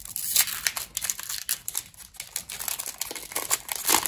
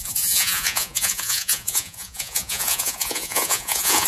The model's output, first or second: second